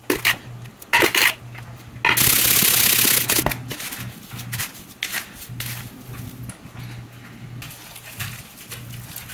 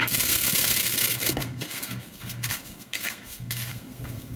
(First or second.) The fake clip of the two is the second